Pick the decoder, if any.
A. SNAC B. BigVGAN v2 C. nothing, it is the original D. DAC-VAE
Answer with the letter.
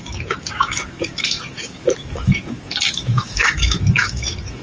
D